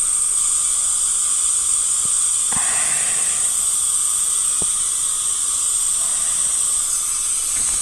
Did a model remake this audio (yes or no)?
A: no